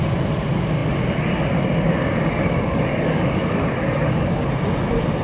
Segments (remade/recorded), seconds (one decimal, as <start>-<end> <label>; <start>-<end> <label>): 0.0-2.0 recorded; 2.0-4.5 remade; 4.5-5.2 recorded